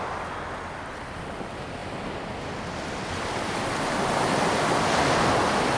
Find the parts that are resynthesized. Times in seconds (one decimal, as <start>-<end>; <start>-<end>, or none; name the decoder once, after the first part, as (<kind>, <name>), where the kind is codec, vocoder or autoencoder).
none